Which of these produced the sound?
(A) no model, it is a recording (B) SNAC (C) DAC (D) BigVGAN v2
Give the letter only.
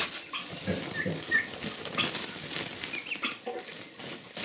A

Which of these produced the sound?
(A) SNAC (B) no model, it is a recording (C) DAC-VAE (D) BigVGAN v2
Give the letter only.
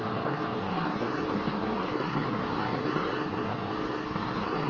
A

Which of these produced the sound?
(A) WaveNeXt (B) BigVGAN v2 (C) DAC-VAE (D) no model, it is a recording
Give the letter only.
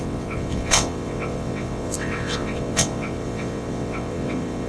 A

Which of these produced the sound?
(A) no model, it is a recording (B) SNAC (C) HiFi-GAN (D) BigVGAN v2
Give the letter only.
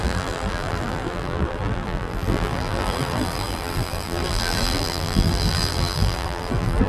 D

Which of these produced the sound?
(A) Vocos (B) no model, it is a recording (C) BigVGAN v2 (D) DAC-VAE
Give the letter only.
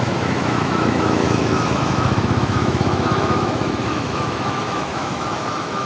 D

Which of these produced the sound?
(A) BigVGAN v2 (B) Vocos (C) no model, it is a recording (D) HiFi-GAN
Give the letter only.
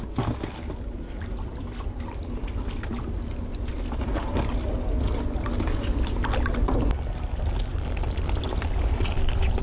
C